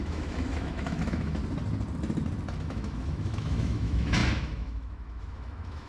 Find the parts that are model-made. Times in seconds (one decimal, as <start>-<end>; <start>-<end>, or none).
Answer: 0.0-1.4; 2.5-5.9